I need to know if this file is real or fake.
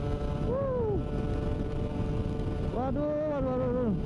real